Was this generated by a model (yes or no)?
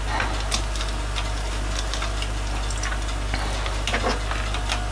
no